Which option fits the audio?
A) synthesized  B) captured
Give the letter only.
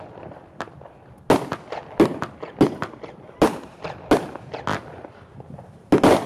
B